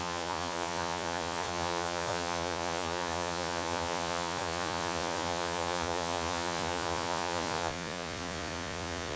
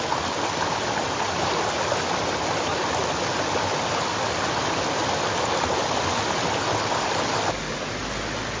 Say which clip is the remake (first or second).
first